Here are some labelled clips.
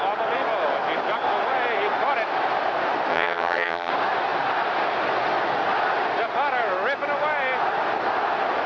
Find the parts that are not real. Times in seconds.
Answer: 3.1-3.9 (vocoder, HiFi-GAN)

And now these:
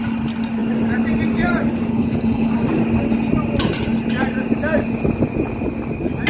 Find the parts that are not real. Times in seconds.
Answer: 1.9-2.5 (codec, HILCodec)

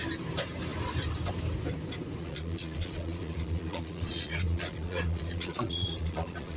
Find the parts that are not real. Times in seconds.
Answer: 2.2-6.6 (vocoder, Vocos)

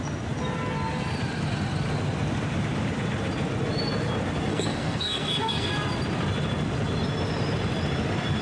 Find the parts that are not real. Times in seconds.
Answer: 4.5-5.7 (codec, SNAC)

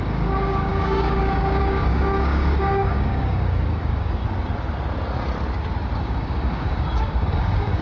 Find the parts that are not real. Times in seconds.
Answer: 0.0-4.2 (codec, DAC); 6.0-7.8